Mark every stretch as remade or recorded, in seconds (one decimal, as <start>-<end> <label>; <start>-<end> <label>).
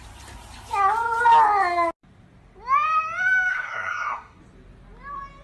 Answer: 0.0-3.5 recorded; 3.5-4.4 remade; 4.4-5.4 recorded